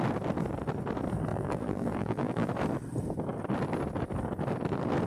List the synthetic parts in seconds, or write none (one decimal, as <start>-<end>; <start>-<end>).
1.3-2.5